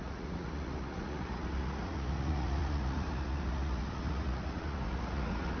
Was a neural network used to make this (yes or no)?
yes